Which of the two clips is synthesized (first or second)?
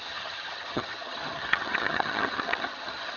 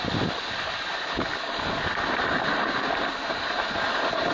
first